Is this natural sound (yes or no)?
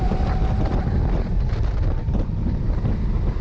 yes